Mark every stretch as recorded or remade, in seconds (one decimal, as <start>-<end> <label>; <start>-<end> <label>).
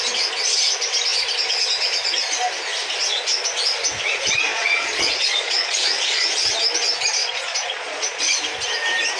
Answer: 0.0-4.5 recorded; 4.5-6.5 remade; 6.5-7.2 recorded; 7.2-8.4 remade; 8.4-9.2 recorded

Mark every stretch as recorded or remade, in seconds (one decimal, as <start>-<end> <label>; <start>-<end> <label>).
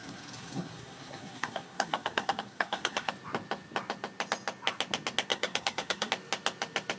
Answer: 0.0-3.1 remade; 3.1-5.3 recorded; 5.3-6.1 remade; 6.1-7.0 recorded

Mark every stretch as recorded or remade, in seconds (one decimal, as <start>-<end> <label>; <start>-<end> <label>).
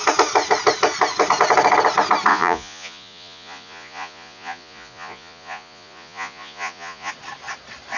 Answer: 0.0-2.3 recorded; 2.3-7.1 remade; 7.1-8.0 recorded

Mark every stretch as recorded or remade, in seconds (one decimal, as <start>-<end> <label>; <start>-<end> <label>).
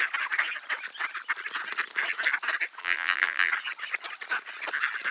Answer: 0.0-2.8 recorded; 2.8-3.5 remade; 3.5-5.1 recorded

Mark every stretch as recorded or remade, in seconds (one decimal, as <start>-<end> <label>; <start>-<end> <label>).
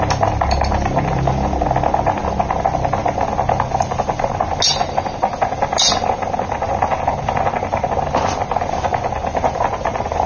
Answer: 0.0-10.3 recorded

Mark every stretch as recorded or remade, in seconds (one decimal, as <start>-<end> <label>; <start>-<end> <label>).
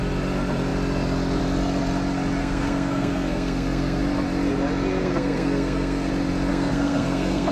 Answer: 0.0-2.4 recorded; 2.4-4.0 remade; 4.0-5.0 recorded; 5.0-6.1 remade; 6.1-6.5 recorded; 6.5-7.5 remade